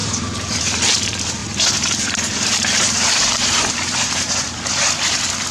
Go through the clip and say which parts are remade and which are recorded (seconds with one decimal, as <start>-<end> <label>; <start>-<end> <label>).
0.0-0.6 remade; 0.6-1.4 recorded; 1.4-4.7 remade; 4.7-5.5 recorded